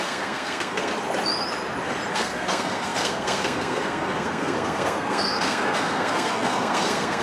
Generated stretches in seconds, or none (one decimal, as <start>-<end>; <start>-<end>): 0.0-0.9; 2.1-7.2